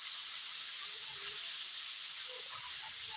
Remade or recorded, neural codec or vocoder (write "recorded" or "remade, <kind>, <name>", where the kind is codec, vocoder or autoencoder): recorded